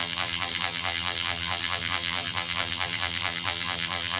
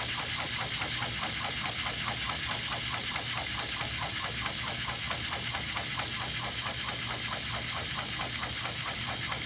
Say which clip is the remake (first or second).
first